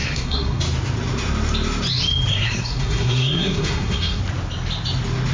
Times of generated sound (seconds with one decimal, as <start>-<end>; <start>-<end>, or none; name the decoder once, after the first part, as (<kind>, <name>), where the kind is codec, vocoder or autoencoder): 0.0-0.6 (codec, SNAC); 2.3-4.2